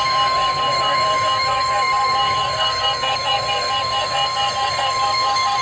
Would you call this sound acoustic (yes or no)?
no